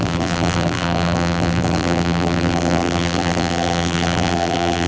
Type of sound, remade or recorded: remade